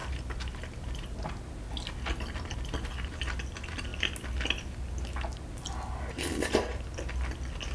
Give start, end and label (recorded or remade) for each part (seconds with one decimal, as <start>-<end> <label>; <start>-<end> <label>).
0.0-7.7 recorded